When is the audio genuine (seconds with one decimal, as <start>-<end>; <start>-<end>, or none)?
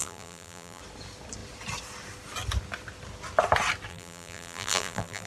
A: 0.8-3.9